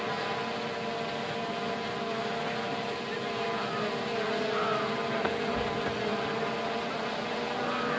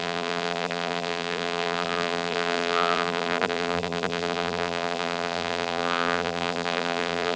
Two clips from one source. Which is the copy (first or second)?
second